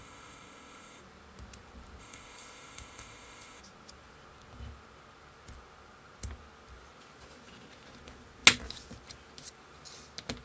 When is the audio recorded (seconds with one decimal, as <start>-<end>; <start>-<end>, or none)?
1.0-2.0; 3.6-10.4